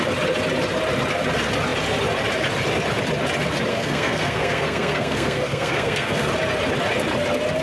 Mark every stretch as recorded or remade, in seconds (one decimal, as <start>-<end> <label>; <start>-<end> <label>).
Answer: 0.0-3.7 recorded; 3.7-6.3 remade; 6.3-7.6 recorded